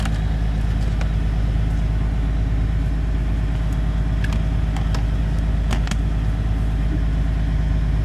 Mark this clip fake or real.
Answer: real